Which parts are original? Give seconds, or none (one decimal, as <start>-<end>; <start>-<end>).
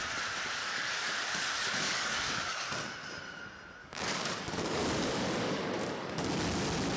0.0-0.6; 2.7-3.8; 6.3-7.0